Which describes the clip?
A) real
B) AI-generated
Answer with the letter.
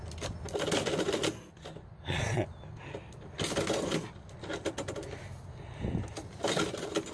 A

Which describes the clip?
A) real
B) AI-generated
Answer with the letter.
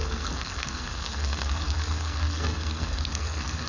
B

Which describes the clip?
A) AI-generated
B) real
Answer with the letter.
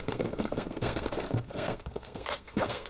A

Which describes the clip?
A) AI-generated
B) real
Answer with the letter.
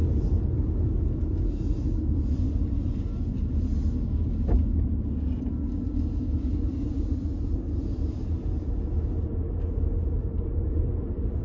B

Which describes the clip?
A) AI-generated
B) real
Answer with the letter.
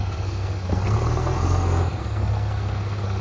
A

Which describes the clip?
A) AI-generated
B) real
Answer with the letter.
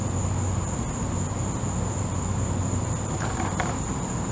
B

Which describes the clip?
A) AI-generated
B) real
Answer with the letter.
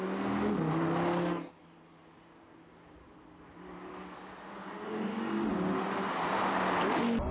B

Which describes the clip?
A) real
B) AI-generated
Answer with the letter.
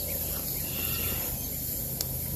A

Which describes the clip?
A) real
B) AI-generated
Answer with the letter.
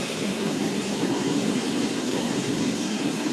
B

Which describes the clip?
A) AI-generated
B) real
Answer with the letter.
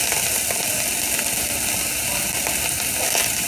B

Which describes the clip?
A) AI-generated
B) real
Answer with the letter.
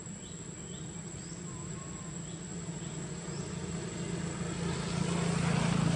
B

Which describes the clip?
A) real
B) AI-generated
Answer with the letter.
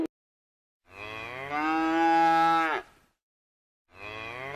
A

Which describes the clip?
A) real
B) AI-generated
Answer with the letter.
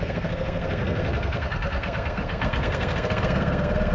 B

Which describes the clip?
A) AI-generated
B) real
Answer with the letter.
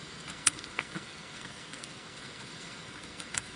A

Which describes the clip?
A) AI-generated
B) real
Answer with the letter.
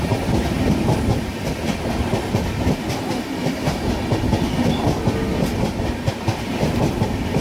B